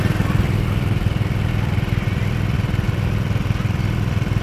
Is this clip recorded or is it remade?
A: recorded